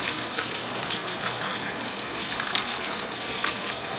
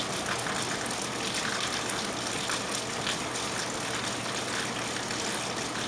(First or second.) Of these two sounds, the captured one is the second